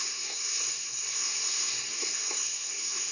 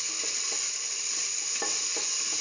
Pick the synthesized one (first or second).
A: first